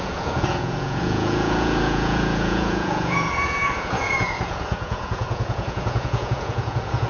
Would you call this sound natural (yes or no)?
no